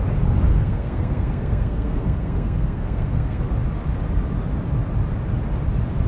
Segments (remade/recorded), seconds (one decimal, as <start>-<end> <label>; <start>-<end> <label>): 0.0-0.5 recorded; 0.5-3.4 remade; 3.4-6.1 recorded